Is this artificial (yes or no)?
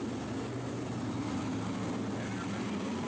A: no